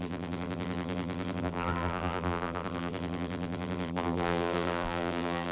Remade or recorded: remade